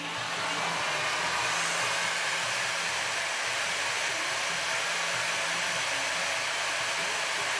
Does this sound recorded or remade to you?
recorded